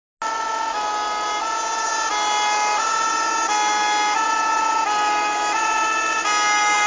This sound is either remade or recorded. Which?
recorded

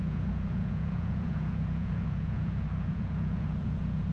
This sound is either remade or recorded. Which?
remade